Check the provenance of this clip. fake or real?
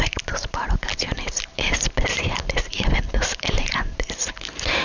fake